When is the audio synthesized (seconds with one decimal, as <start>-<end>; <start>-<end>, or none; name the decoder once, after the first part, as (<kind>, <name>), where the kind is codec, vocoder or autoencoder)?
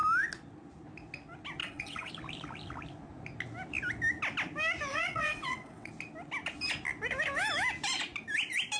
1.6-2.1 (vocoder, WaveNeXt); 4.9-5.9